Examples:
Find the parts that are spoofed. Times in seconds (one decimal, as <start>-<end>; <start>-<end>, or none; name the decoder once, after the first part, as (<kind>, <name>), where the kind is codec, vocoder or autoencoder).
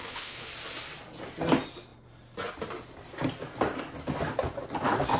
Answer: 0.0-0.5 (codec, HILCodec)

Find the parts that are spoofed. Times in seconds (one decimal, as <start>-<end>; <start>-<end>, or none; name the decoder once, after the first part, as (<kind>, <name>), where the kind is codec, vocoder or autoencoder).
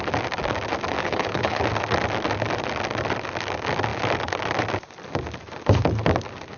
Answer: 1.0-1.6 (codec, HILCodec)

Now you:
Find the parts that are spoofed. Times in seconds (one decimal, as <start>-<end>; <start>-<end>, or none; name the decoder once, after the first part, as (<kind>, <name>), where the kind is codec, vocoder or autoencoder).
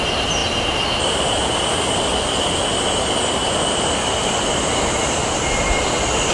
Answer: none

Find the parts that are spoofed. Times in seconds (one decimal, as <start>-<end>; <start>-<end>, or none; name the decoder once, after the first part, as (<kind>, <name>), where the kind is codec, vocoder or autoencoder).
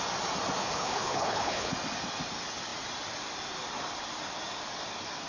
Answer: 0.6-1.7 (codec, HILCodec)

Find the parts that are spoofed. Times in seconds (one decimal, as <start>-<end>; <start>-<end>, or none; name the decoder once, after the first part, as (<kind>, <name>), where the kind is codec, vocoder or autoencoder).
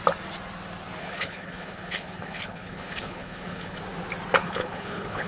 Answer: 1.0-3.8 (codec, HILCodec); 4.4-5.3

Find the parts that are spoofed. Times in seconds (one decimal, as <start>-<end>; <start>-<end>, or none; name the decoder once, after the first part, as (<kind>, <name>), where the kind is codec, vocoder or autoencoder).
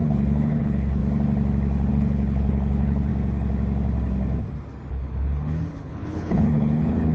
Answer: 0.0-1.0 (codec, HILCodec); 1.9-3.1; 4.9-7.1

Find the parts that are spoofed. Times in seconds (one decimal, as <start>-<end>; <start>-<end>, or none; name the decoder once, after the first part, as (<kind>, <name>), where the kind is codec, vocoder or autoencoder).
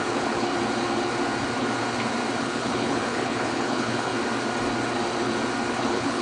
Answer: 0.0-0.5 (codec, HILCodec); 2.4-4.1; 5.7-6.2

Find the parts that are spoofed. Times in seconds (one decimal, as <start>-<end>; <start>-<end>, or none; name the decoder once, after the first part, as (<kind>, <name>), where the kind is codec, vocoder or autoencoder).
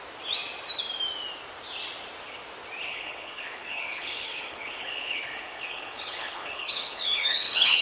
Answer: 2.9-7.8 (codec, HILCodec)